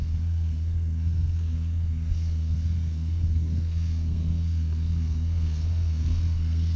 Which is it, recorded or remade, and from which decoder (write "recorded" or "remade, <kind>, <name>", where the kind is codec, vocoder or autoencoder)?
remade, codec, SNAC